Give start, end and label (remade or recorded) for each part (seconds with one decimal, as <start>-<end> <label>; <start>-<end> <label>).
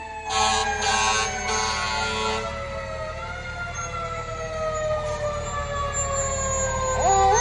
0.0-7.4 recorded